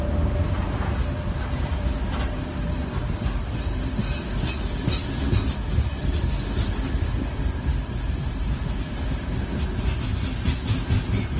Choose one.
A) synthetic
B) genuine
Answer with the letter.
B